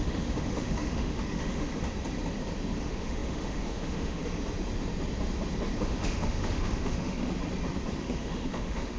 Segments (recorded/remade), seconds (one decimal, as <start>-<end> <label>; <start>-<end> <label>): 0.0-1.7 remade; 1.7-2.8 recorded; 2.8-4.2 remade; 4.2-5.8 recorded; 5.8-7.3 remade; 7.3-8.0 recorded; 8.0-9.0 remade